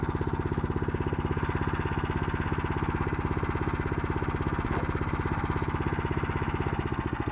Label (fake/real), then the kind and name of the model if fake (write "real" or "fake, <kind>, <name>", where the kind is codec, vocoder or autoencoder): real